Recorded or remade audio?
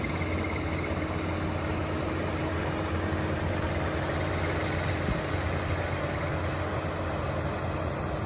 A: recorded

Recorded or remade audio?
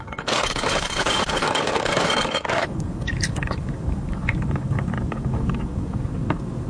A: remade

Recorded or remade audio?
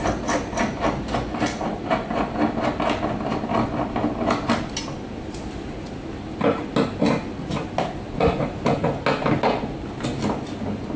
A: recorded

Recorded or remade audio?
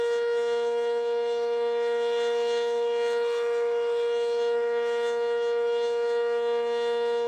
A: remade